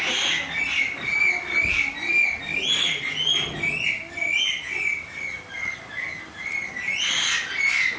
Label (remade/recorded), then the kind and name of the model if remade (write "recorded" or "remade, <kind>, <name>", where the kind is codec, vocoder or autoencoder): recorded